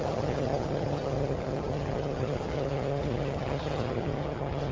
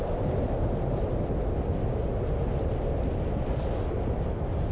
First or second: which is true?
second